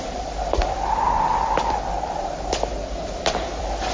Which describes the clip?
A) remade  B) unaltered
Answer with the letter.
A